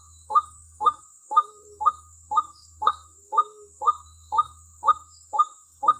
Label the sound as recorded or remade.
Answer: remade